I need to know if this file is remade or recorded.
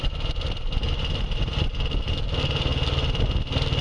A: recorded